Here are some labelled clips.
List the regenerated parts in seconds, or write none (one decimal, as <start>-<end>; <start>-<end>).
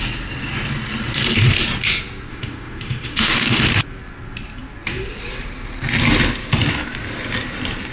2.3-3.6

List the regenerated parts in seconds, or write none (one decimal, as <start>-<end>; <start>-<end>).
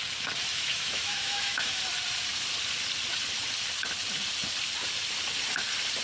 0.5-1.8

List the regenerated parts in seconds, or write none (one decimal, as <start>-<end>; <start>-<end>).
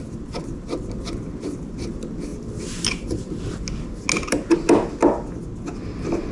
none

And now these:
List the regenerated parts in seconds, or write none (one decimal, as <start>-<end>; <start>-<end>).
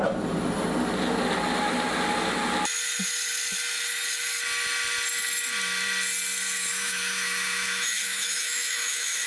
6.7-9.3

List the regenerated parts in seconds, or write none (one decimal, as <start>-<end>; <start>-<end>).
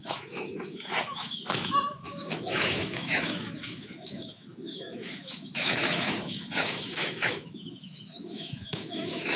0.0-9.4